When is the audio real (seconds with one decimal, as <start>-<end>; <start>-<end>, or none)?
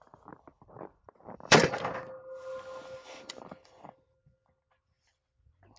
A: 0.0-0.5; 1.8-3.0; 4.6-5.8